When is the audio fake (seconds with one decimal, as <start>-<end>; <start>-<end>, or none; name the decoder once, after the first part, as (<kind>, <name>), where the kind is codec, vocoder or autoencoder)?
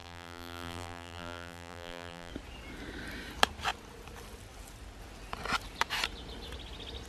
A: 0.0-2.3 (vocoder, BigVGAN v2)